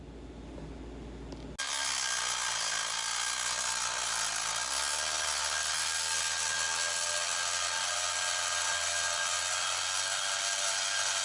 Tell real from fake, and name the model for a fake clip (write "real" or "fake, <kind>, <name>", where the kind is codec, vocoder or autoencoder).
real